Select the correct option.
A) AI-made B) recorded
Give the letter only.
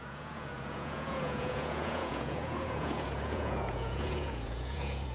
A